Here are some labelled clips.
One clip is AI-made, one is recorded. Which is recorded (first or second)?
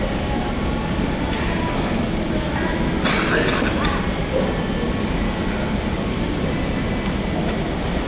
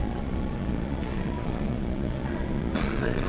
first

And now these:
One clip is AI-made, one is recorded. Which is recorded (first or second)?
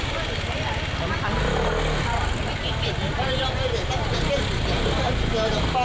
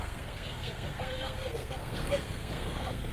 first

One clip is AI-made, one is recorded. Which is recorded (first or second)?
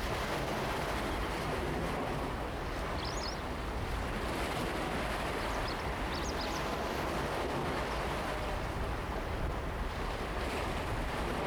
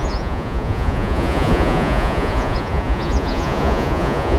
first